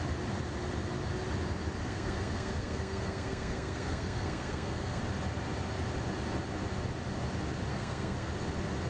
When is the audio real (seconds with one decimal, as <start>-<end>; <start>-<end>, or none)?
0.0-1.8; 5.0-7.7; 8.3-8.9